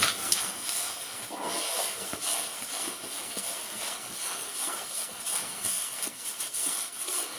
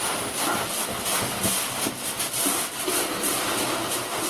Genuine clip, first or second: second